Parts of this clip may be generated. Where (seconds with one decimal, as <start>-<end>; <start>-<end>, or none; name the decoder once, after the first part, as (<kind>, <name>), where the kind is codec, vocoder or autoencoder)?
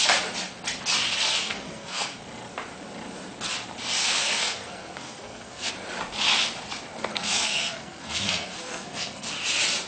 1.3-2.2 (codec, SNAC); 4.0-5.7; 7.1-9.3